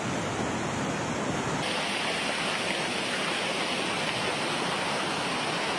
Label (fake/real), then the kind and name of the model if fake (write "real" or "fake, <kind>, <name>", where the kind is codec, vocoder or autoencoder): real